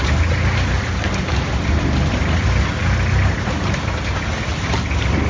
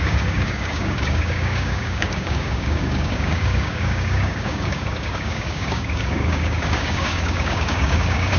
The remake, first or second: second